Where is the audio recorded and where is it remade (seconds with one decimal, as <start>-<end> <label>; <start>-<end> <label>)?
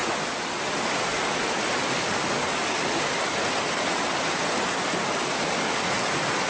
0.0-6.5 recorded